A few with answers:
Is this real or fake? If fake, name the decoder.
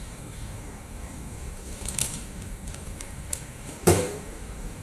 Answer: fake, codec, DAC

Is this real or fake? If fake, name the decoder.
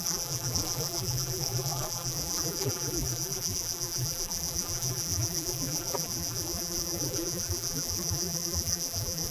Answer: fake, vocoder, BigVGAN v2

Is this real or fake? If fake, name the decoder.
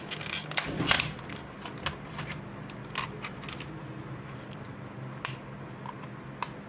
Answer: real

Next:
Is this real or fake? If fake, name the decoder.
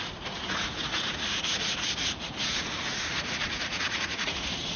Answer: fake, vocoder, Vocos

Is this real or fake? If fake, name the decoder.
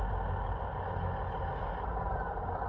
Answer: real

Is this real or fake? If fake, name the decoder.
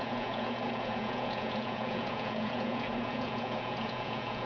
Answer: fake, vocoder, Vocos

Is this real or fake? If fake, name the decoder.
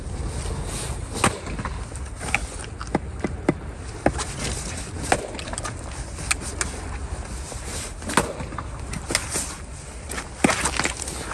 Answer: real